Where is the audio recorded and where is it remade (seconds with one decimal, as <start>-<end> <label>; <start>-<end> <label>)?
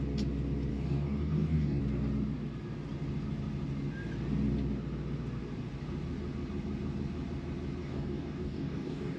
0.0-0.7 recorded; 0.7-1.8 remade; 1.8-7.8 recorded; 7.8-9.2 remade